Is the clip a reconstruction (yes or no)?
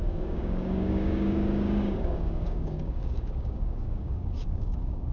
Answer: yes